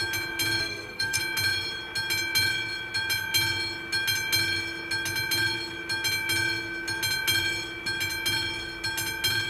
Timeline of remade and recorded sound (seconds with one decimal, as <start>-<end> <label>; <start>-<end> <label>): 0.0-0.6 recorded; 0.6-1.2 remade; 1.2-9.5 recorded